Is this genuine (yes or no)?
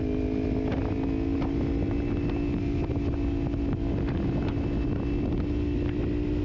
yes